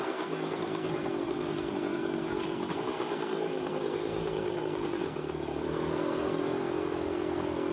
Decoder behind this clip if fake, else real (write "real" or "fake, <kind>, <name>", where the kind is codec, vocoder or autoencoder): fake, codec, SNAC